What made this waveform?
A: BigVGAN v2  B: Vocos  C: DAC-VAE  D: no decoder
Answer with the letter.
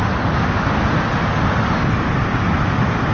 D